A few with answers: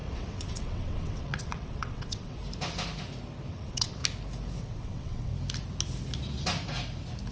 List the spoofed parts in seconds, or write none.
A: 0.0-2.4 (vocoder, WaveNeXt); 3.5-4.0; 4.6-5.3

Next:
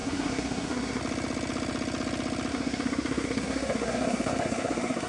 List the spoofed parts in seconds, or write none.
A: 0.0-1.0 (codec, SNAC); 2.5-5.1

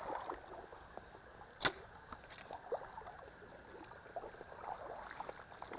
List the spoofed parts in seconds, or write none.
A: none

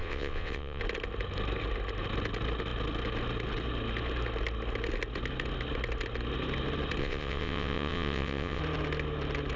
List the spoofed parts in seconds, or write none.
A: 0.0-0.8 (vocoder, WaveNeXt); 7.0-8.6

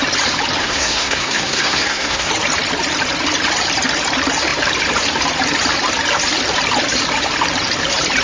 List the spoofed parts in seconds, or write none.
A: 0.6-2.3 (codec, SNAC)